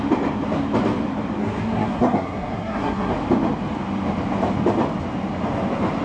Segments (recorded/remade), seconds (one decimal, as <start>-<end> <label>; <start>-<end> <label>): 0.0-1.4 recorded; 1.4-3.1 remade; 3.1-6.0 recorded